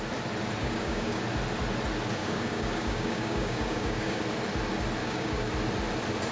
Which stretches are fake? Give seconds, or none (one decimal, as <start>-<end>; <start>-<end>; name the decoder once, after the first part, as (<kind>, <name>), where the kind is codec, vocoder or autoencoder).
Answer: 0.6-1.2 (codec, DAC); 2.2-4.2; 5.0-5.5